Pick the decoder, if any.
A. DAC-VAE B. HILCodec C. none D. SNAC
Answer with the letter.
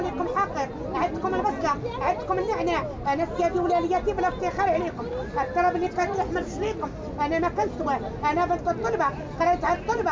C